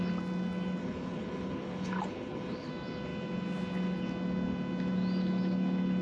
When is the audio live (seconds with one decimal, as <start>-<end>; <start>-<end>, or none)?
0.0-0.8; 2.7-6.0